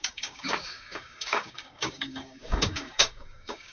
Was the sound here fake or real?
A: fake